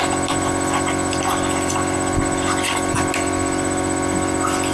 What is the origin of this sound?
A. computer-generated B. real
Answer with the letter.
B